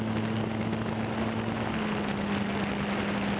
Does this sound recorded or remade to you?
recorded